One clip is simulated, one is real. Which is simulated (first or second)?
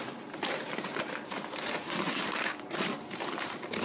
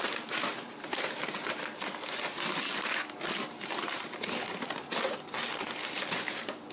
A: first